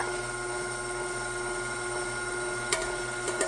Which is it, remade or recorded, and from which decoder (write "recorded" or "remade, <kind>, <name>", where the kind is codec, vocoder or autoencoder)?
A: recorded